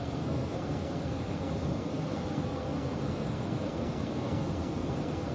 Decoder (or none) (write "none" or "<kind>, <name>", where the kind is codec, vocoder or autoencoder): codec, SNAC